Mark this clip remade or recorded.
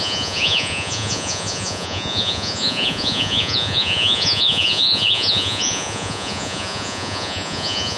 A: remade